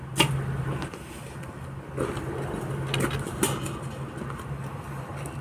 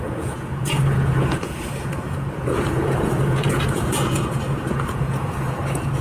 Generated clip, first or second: second